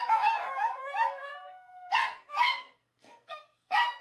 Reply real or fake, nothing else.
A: fake